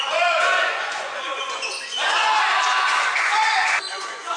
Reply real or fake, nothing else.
fake